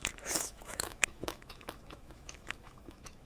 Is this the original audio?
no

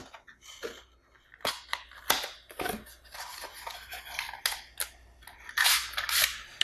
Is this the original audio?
yes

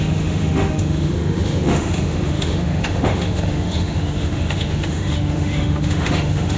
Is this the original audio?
no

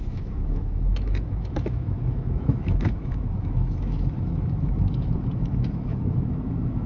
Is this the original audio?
no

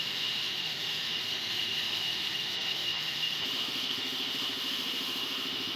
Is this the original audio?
no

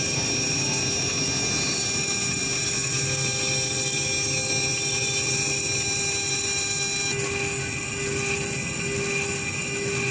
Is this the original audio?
yes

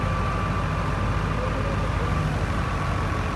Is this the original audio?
yes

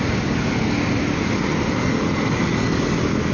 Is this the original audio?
yes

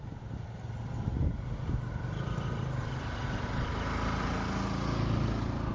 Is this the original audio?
yes